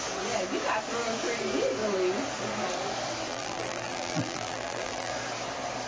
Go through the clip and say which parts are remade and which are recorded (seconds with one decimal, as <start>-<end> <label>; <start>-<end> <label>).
0.0-3.3 recorded; 3.3-5.1 remade; 5.1-5.9 recorded